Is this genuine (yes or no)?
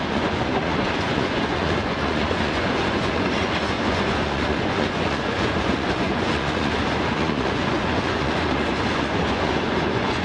no